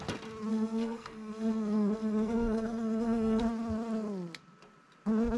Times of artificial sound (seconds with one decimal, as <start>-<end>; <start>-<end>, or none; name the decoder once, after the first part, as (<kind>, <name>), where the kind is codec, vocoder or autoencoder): 0.5-3.4 (codec, SNAC)